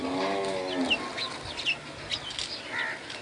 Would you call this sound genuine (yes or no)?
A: yes